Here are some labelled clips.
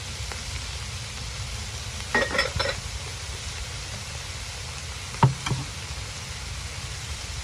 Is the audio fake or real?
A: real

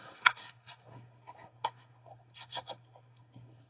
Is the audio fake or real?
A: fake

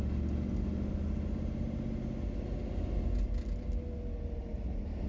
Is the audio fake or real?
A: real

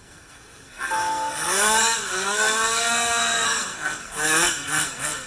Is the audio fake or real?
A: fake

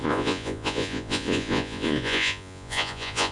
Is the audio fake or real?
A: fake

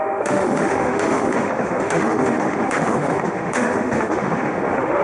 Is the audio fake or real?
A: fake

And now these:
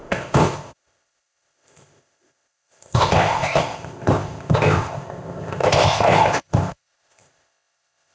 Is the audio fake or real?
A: fake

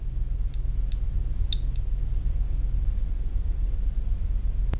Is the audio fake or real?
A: real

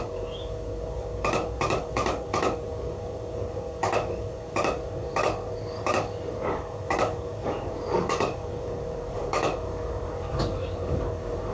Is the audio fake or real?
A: fake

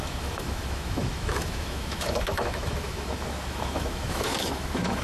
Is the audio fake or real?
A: fake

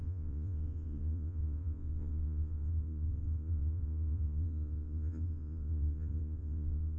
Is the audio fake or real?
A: fake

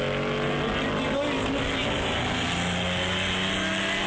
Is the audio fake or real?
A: real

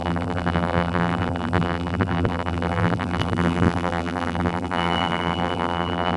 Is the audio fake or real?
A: fake